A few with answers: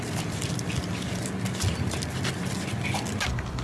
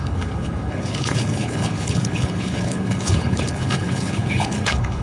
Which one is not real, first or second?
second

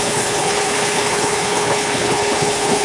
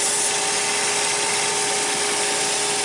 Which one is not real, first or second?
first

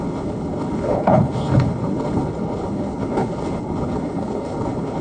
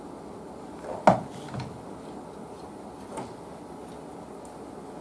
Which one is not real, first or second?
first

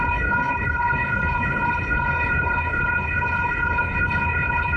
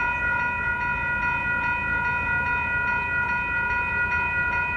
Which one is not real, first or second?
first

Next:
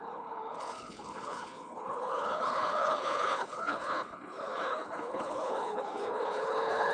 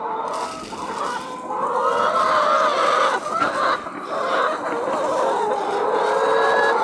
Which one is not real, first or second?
first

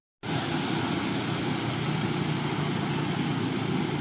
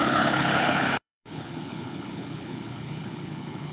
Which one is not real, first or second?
second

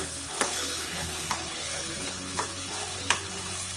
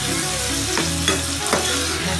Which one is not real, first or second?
first